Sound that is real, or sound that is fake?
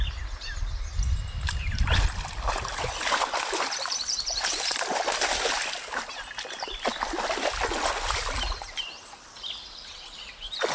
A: real